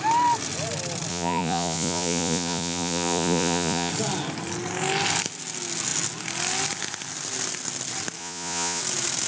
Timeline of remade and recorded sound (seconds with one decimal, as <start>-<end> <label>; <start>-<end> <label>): 0.0-1.1 recorded; 1.1-3.9 remade; 3.9-8.2 recorded; 8.2-8.8 remade; 8.8-9.3 recorded